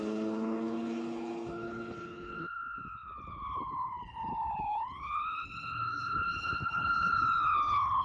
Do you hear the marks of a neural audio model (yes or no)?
yes